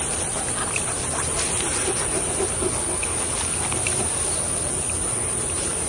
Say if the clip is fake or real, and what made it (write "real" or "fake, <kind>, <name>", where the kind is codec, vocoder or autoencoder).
real